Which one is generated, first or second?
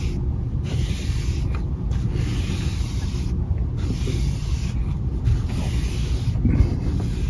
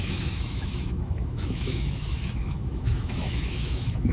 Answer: second